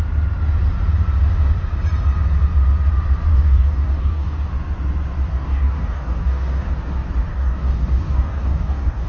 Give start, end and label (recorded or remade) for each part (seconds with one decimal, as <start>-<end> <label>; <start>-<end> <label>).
0.0-3.3 recorded; 3.3-4.5 remade; 4.5-5.3 recorded; 5.3-6.7 remade; 6.7-7.3 recorded; 7.3-9.1 remade